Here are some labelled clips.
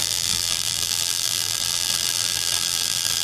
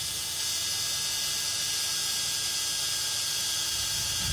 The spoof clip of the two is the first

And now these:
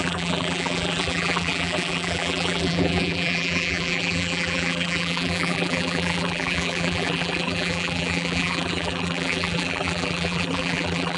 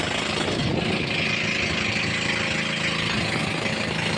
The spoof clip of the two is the first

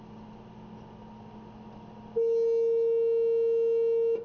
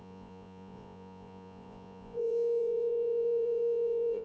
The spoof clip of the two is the second